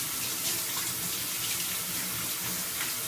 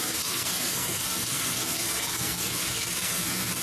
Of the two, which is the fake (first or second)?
second